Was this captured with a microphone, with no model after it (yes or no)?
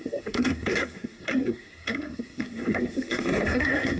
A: no